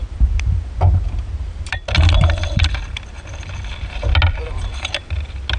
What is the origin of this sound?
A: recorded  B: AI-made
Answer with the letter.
A